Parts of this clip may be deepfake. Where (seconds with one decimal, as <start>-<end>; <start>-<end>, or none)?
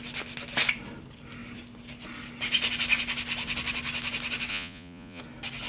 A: 4.5-5.2